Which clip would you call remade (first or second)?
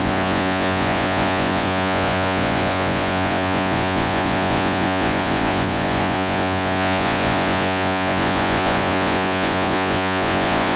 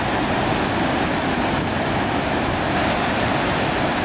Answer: first